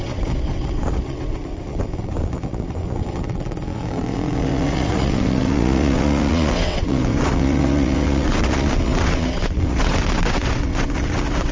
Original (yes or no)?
no